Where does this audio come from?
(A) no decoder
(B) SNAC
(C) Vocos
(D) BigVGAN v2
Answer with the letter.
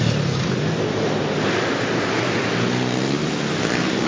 A